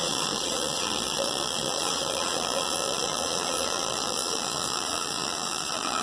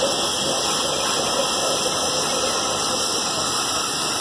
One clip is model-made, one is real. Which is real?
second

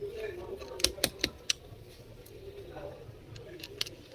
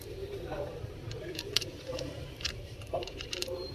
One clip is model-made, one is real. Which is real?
first